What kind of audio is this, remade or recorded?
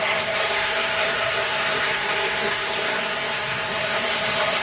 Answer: remade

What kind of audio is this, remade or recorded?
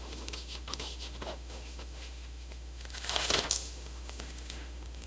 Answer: remade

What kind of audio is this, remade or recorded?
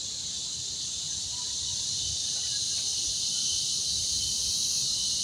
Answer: remade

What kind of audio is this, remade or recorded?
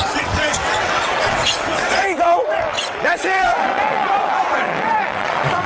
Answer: remade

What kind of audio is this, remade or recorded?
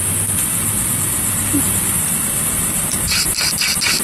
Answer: recorded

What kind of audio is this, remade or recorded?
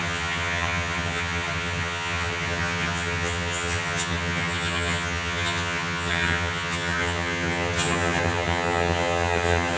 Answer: remade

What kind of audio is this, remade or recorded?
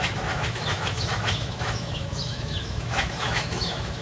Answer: remade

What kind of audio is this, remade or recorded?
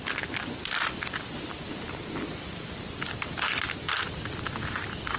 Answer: recorded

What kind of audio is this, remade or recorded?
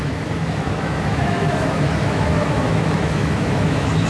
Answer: remade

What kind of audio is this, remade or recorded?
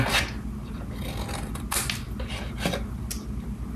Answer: recorded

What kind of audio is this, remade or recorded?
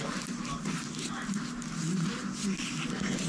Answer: recorded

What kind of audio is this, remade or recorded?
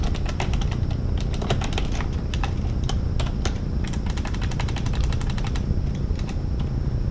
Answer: recorded